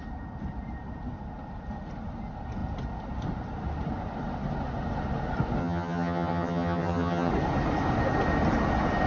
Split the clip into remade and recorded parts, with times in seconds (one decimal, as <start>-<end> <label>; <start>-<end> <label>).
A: 0.0-5.6 recorded; 5.6-7.3 remade; 7.3-9.1 recorded